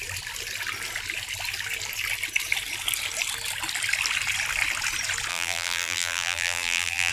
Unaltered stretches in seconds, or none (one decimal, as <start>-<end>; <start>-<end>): 0.0-5.3